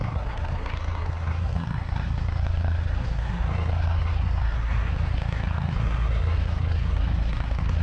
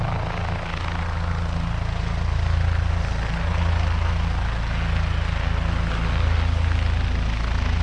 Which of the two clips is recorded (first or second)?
second